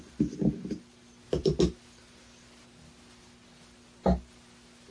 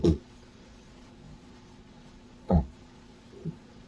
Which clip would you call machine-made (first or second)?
second